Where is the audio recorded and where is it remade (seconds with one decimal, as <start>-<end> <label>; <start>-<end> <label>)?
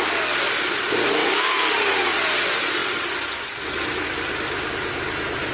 0.0-1.2 recorded; 1.2-2.2 remade; 2.2-5.5 recorded